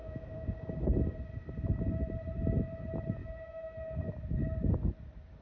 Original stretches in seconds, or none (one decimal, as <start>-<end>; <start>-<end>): 0.5-3.2; 3.8-5.4